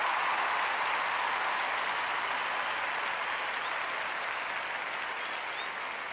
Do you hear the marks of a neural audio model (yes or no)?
no